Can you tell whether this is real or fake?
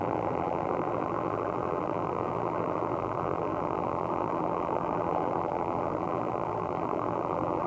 fake